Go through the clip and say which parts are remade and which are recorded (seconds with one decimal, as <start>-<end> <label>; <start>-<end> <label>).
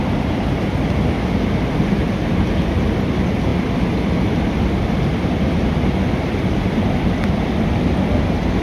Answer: 0.0-8.6 recorded